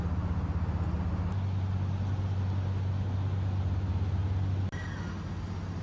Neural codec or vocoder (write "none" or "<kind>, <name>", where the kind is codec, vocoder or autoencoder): none